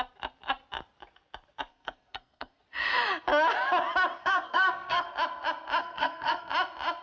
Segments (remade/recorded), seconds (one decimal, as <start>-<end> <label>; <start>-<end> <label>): 0.0-1.7 recorded; 1.7-2.6 remade; 2.6-4.2 recorded; 4.2-5.1 remade; 5.1-5.8 recorded; 5.8-6.5 remade; 6.5-7.0 recorded